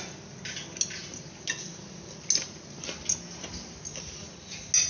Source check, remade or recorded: recorded